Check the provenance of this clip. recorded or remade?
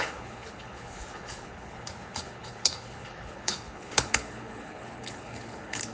remade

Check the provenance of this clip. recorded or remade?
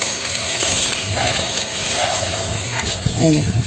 remade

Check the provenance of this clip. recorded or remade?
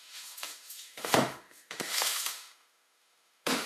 remade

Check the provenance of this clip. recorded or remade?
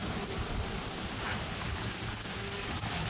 recorded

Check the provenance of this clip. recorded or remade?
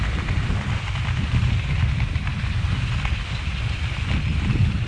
recorded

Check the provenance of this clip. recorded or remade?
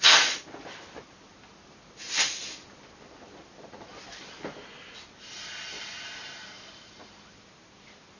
recorded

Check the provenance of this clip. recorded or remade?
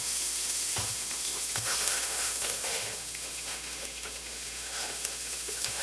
remade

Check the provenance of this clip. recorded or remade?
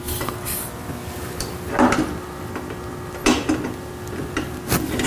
recorded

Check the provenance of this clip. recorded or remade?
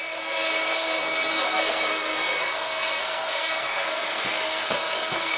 remade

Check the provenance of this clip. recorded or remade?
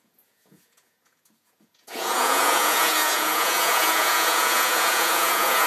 remade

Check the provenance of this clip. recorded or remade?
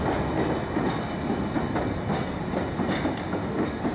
recorded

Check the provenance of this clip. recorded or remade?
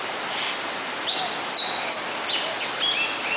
recorded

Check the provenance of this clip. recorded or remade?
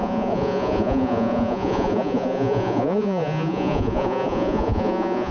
remade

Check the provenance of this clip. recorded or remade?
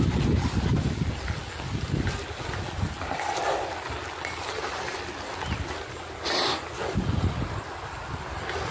recorded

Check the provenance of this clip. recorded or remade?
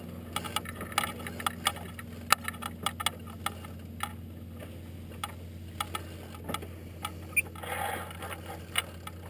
recorded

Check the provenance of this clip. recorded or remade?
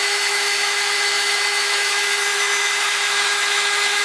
remade